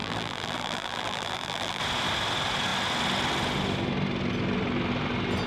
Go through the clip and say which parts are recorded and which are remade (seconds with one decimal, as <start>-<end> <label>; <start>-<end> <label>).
0.0-1.8 remade; 1.8-5.5 recorded

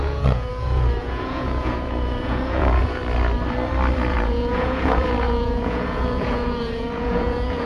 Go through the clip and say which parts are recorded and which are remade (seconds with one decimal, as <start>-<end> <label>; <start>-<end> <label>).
0.0-3.0 remade; 3.0-4.1 recorded; 4.1-7.7 remade

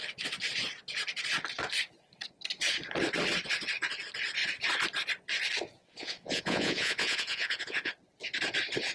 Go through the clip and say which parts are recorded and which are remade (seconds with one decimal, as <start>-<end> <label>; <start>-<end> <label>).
0.0-5.8 recorded; 5.8-7.9 remade; 7.9-8.9 recorded

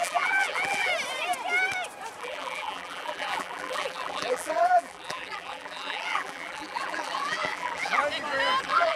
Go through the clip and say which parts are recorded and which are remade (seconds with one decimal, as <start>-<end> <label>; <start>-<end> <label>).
0.0-0.9 remade; 0.9-2.2 recorded; 2.2-8.0 remade; 8.0-8.6 recorded; 8.6-9.0 remade

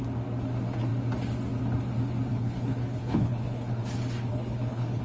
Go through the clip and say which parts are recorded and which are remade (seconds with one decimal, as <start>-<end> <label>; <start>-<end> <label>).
0.0-2.3 recorded; 2.3-3.8 remade; 3.8-4.3 recorded; 4.3-5.0 remade

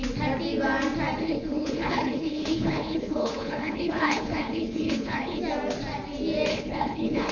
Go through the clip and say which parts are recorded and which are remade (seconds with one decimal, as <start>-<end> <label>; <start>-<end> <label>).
0.0-1.2 recorded; 1.2-5.4 remade; 5.4-6.5 recorded; 6.5-7.3 remade